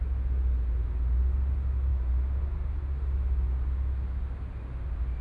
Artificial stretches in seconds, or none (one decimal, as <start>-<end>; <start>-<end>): none